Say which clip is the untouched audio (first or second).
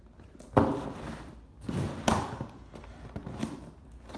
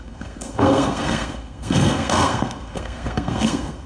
first